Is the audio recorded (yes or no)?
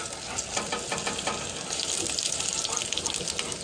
yes